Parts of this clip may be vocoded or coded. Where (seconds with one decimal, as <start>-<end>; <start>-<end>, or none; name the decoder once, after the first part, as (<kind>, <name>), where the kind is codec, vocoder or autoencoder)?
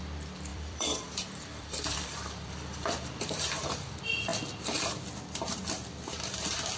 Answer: 0.5-3.9 (vocoder, BigVGAN v2)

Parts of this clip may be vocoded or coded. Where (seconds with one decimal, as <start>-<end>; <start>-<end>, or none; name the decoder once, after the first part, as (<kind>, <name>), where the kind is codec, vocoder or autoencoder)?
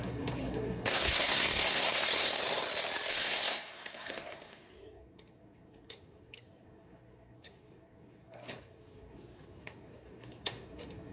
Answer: 0.0-2.4 (codec, SNAC); 3.1-11.1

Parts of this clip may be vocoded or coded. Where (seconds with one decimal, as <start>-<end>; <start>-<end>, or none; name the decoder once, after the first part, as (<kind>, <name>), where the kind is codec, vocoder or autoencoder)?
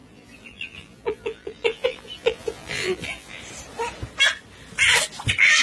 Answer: 0.0-3.4 (vocoder, BigVGAN v2)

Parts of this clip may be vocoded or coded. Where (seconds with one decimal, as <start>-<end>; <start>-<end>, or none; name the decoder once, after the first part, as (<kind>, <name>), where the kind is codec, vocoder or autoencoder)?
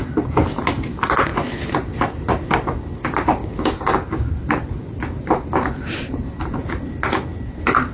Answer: 3.4-4.3 (codec, DAC)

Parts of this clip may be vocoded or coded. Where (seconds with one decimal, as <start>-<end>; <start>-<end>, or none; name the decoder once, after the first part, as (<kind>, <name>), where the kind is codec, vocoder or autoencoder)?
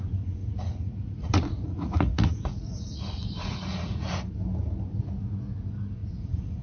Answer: 0.4-4.3 (vocoder, Vocos); 6.0-6.6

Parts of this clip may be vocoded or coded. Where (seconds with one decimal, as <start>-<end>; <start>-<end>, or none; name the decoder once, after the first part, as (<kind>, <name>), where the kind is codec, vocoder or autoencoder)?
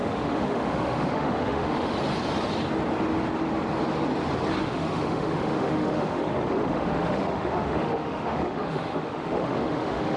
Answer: 0.0-1.9 (autoencoder, DAC-VAE); 4.6-10.2